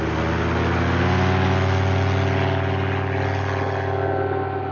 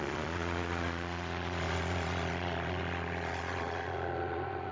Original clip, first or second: first